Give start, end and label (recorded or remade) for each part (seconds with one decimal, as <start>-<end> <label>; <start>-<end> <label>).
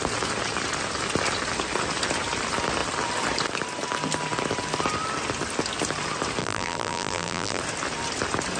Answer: 0.0-6.4 recorded; 6.4-7.6 remade; 7.6-8.6 recorded